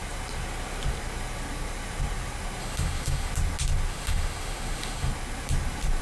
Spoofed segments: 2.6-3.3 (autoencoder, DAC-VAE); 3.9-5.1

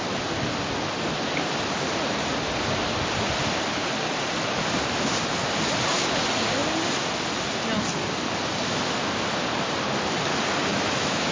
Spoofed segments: 10.7-11.3 (autoencoder, DAC-VAE)

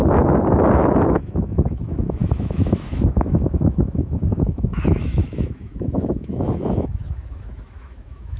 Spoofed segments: 1.1-8.4 (autoencoder, DAC-VAE)

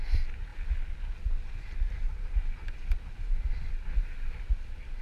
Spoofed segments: none

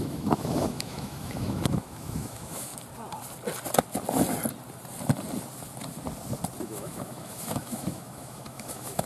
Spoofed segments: 0.0-2.7 (autoencoder, DAC-VAE); 6.6-9.1